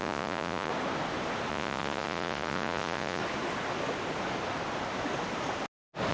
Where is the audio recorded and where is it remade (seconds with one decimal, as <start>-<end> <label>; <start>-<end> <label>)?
0.0-0.7 remade; 0.7-1.5 recorded; 1.5-3.2 remade; 3.2-6.1 recorded